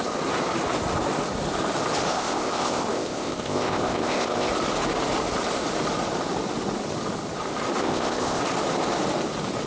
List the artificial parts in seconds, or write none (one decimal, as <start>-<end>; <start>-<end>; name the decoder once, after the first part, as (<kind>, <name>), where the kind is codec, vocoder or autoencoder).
2.1-4.5 (codec, ZipCodec); 7.8-8.4